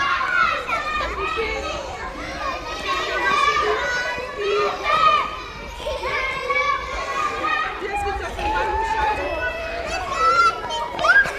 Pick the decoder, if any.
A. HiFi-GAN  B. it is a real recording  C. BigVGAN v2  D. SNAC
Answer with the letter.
C